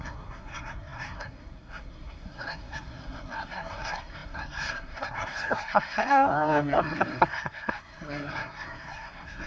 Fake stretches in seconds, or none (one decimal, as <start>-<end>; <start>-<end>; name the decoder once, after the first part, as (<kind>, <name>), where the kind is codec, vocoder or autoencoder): 0.0-9.5 (codec, SNAC)